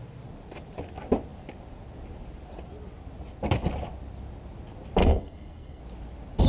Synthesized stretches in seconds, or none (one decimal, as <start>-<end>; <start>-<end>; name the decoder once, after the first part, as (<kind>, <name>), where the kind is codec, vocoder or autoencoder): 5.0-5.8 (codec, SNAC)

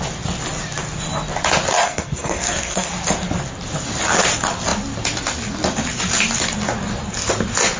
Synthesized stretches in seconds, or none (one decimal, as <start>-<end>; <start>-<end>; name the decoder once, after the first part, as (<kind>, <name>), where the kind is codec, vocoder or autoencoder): 1.8-2.9 (codec, SNAC)

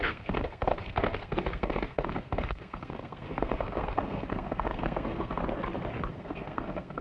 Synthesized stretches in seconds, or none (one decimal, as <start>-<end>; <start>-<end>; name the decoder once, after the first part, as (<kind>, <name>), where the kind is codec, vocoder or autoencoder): 0.0-5.4 (codec, SNAC); 6.1-7.0